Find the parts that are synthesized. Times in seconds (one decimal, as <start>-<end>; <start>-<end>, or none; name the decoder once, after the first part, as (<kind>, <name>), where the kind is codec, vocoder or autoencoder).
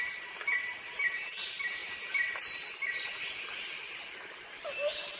none